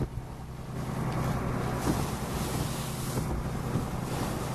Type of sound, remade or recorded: recorded